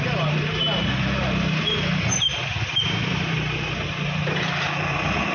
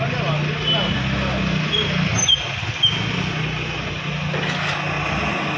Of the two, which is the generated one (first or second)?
first